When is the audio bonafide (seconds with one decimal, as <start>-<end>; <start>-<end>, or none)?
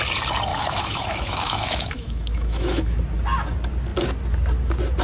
0.0-0.5; 3.0-5.0